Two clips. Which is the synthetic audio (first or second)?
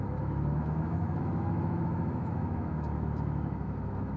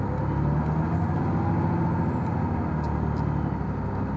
first